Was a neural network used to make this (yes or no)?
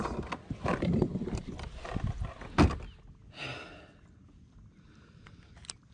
no